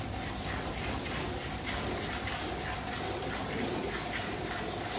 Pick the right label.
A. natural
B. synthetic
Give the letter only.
A